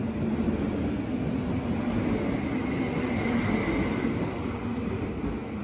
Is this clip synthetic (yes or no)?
no